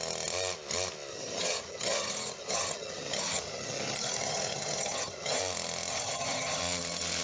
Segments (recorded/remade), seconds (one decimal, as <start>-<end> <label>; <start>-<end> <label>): 0.0-1.1 recorded; 1.1-5.4 remade; 5.4-5.9 recorded; 5.9-6.6 remade; 6.6-7.2 recorded